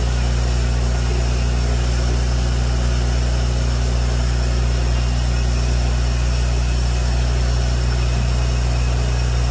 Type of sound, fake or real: real